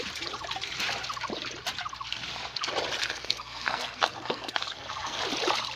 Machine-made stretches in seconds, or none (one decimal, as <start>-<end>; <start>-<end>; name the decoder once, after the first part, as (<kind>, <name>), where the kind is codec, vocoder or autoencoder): 3.0-5.2 (codec, SNAC)

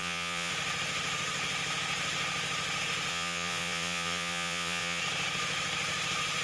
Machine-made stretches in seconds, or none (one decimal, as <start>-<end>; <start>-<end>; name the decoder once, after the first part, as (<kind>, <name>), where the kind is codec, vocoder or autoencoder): 0.0-0.5 (vocoder, Vocos); 3.1-5.0

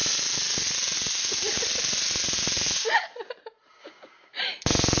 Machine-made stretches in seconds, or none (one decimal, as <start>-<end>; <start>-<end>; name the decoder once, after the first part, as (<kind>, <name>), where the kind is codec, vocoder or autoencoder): 3.8-4.4 (codec, DAC)

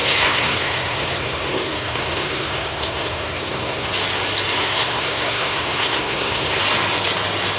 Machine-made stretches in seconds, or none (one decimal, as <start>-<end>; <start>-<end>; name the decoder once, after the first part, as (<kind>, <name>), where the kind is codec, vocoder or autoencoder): 0.0-3.9 (codec, SNAC); 4.6-6.6